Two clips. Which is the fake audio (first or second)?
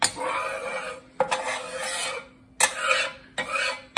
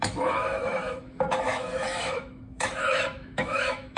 second